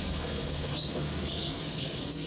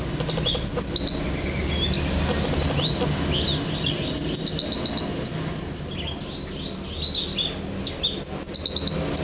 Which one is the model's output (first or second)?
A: first